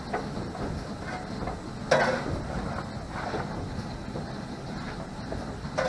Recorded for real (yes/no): yes